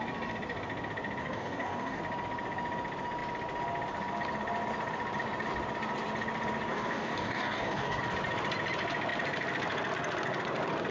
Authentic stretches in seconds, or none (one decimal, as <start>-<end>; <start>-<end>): 0.0-1.2; 2.0-6.7; 8.0-10.9